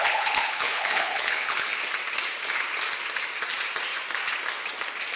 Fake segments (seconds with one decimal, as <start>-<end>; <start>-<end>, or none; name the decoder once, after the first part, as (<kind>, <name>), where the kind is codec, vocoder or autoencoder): 0.0-1.8 (codec, HILCodec)